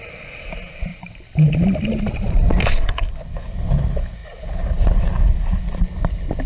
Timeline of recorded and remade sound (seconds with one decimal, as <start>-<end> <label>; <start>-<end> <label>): 0.0-2.6 recorded; 2.6-3.1 remade; 3.1-6.5 recorded